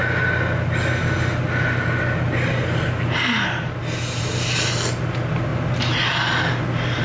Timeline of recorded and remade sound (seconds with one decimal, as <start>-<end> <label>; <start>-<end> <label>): 0.0-7.0 recorded